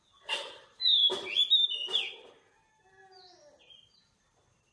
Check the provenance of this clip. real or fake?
real